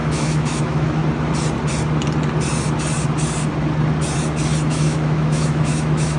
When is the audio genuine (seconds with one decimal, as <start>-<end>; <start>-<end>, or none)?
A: 1.0-4.7